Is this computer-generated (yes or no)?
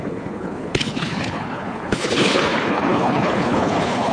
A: yes